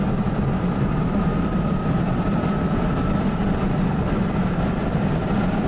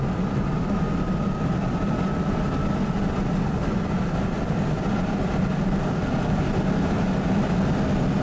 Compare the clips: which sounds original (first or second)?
second